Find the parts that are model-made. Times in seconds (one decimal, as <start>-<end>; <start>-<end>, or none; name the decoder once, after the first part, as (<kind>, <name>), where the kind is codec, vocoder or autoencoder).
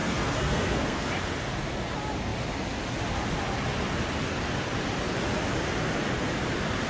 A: 0.0-1.1 (codec, SNAC)